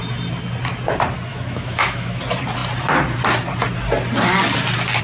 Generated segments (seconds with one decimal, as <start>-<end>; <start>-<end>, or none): 1.3-2.2